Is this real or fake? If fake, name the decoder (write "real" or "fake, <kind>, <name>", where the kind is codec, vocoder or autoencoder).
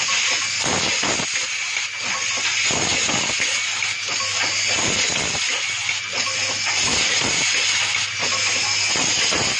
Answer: real